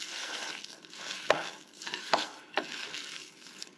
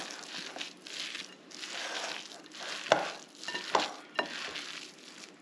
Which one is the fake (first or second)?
first